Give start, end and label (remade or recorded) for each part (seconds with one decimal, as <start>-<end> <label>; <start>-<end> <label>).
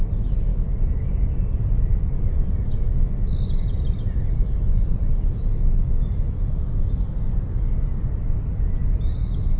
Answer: 0.0-9.6 recorded